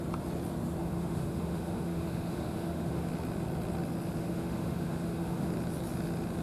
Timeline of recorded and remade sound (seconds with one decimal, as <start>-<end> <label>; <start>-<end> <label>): 0.0-0.8 recorded; 0.8-3.1 remade; 3.1-4.2 recorded; 4.2-5.5 remade; 5.5-6.4 recorded